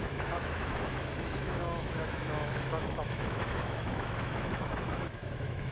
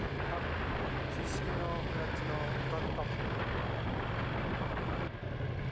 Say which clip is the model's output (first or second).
first